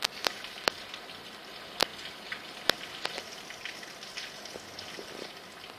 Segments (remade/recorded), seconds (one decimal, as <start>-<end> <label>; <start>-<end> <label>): 0.0-5.8 recorded